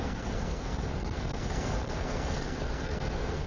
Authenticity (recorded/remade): remade